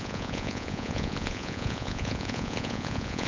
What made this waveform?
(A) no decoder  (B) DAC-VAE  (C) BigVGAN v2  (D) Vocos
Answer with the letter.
D